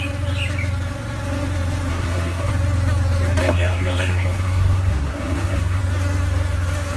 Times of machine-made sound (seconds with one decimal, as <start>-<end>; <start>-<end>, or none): 1.9-2.5; 3.4-5.8